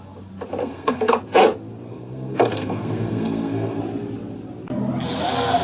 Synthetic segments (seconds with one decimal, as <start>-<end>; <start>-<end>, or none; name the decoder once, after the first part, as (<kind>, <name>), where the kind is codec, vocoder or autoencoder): 0.6-1.2 (codec, SNAC); 1.9-3.8